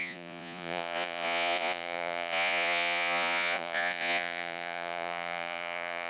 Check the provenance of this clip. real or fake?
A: fake